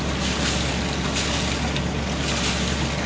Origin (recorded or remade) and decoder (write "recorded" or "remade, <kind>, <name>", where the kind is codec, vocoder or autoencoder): recorded